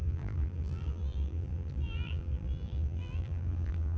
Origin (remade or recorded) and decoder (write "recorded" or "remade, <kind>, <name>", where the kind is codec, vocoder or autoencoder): remade, vocoder, BigVGAN v2